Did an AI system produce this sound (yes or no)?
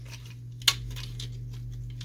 no